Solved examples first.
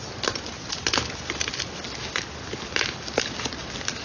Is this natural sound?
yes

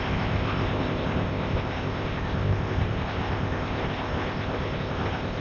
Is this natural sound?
no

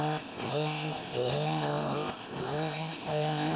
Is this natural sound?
no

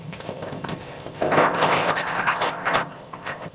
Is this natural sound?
no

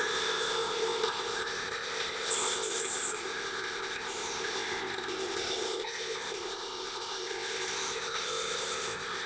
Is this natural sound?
no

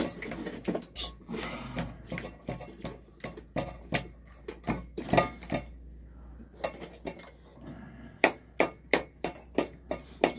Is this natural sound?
yes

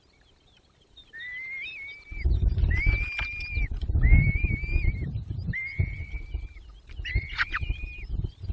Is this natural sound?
yes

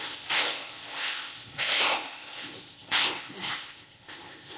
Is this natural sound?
no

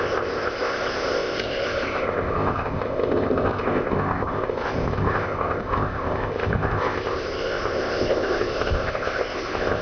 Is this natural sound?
no